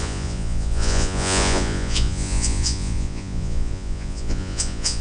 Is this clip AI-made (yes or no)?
yes